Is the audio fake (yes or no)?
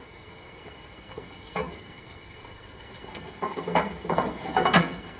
yes